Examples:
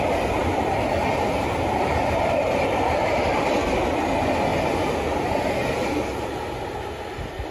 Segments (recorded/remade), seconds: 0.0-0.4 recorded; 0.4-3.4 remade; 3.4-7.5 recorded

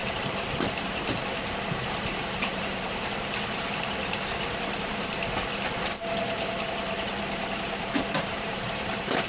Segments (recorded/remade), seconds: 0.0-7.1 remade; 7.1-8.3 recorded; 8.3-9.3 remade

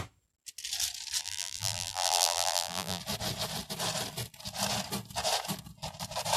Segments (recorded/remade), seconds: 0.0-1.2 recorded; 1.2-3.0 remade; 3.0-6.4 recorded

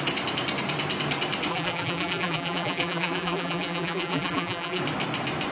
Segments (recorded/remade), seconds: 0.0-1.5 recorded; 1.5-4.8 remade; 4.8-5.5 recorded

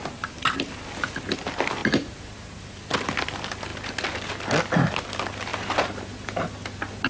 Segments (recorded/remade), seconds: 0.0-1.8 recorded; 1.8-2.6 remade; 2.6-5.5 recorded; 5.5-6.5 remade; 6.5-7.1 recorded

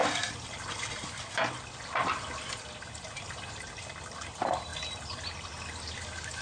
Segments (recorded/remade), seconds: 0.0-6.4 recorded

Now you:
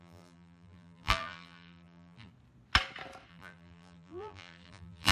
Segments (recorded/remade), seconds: 0.0-2.3 remade; 2.3-3.3 recorded; 3.3-5.1 remade

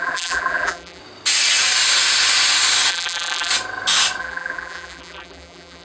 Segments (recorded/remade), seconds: 0.0-1.0 remade; 1.0-2.9 recorded; 2.9-3.5 remade; 3.5-4.2 recorded; 4.2-5.8 remade